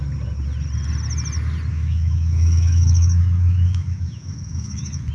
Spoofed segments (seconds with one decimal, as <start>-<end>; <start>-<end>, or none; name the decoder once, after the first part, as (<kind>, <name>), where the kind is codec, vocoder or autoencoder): 1.7-5.1 (autoencoder, DAC-VAE)